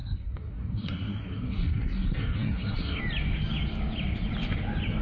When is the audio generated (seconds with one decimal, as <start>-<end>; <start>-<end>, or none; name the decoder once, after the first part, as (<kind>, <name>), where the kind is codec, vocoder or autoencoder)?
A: 0.0-3.0 (codec, SNAC)